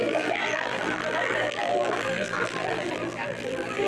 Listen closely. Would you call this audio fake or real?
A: fake